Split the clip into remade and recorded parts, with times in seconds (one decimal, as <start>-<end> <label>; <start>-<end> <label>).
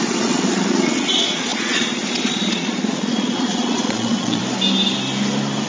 0.0-4.4 remade; 4.4-5.7 recorded